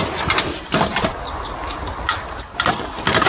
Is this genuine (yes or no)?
yes